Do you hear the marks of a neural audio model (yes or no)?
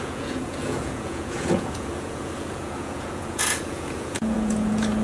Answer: yes